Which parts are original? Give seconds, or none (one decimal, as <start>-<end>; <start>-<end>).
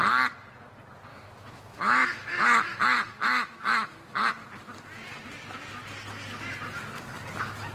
0.0-1.1; 4.3-7.7